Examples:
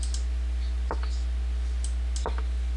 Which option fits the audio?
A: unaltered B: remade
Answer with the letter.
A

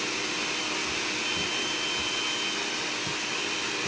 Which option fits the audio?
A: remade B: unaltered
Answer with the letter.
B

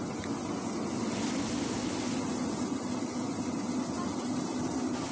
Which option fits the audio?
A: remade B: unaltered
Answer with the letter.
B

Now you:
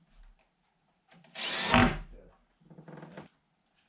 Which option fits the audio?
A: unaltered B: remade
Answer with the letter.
A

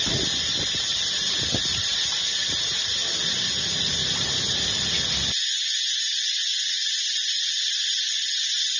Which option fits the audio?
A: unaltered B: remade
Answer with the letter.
A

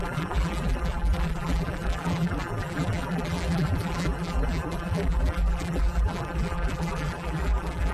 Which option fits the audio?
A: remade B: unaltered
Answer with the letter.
A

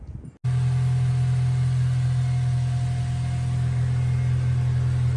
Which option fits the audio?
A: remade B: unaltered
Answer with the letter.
B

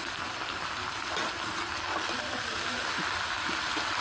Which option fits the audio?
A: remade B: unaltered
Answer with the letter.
B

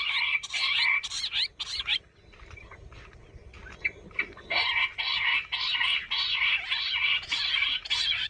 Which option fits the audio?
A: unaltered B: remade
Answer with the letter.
A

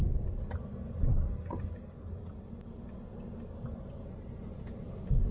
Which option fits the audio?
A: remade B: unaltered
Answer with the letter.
B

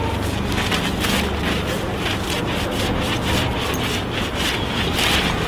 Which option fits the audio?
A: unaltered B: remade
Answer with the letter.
A